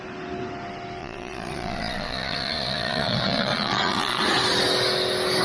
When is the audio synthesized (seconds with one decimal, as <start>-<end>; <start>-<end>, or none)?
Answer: 1.0-4.2